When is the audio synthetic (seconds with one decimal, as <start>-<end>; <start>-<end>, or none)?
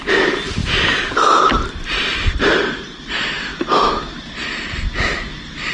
0.0-5.7